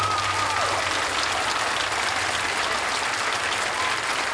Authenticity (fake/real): real